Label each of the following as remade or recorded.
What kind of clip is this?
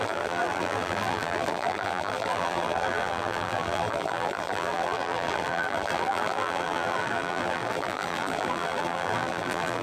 remade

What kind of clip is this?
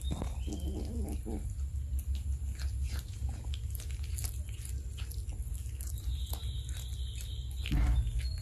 recorded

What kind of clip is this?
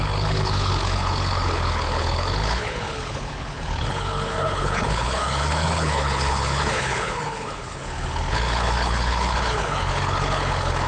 remade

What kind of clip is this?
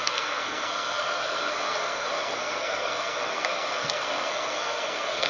remade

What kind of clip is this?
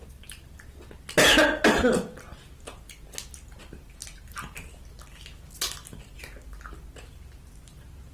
recorded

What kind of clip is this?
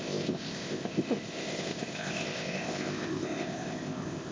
remade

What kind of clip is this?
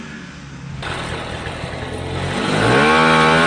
recorded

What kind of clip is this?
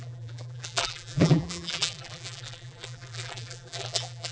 remade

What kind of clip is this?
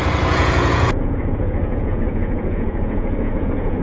remade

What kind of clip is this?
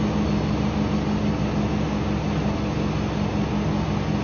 recorded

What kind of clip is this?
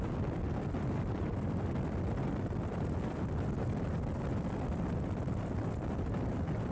remade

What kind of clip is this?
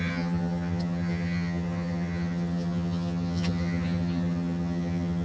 remade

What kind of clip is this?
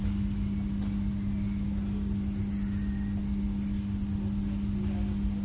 recorded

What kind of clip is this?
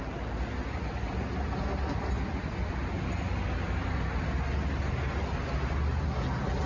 recorded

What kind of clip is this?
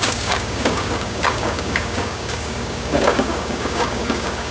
remade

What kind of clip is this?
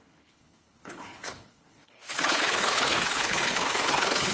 remade